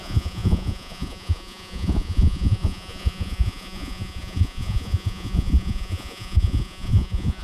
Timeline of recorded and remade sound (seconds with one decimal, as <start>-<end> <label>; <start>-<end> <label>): 0.0-7.4 remade